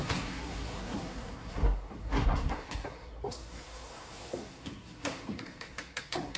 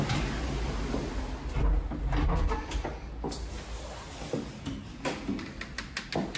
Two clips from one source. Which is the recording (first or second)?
second